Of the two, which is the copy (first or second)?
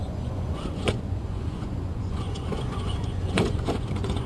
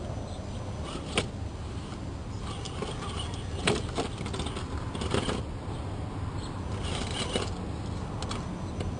first